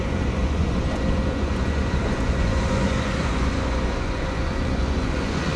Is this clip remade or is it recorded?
remade